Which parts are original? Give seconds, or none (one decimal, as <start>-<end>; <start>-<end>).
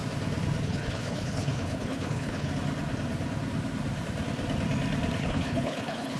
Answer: 0.0-0.6; 2.5-5.2